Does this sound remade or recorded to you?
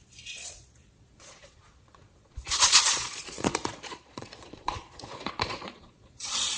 remade